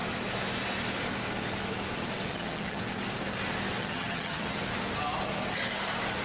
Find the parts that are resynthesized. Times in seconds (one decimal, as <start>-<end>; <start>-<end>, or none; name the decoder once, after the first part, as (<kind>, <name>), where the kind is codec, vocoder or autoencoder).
2.3-2.8 (vocoder, HiFi-GAN); 3.8-4.6

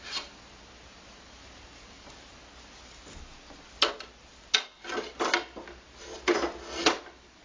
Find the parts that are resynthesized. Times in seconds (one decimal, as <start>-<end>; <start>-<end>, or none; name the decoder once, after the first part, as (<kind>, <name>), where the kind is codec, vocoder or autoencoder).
0.0-2.4 (vocoder, BigVGAN v2); 6.8-7.4

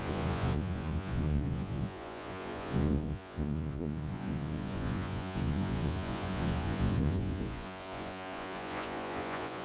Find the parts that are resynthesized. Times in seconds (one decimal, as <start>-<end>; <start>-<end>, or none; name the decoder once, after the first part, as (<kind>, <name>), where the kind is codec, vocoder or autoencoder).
0.0-9.6 (vocoder, Vocos)